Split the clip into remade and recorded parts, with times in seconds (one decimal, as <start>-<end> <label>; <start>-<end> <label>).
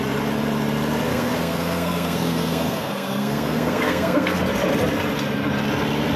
0.0-1.1 recorded; 1.1-4.4 remade; 4.4-6.2 recorded